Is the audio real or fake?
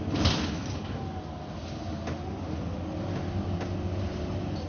real